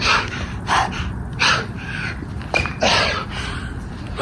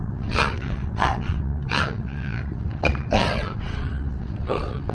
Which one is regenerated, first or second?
second